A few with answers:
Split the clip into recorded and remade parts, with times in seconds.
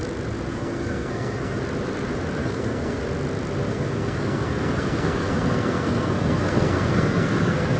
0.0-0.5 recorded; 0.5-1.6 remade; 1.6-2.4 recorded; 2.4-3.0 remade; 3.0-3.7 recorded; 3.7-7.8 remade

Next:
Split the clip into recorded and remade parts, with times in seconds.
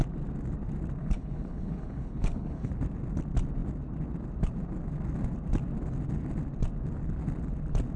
0.0-1.0 recorded; 1.0-2.7 remade; 2.7-8.0 recorded